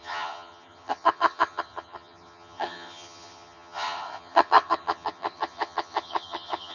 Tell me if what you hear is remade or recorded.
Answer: remade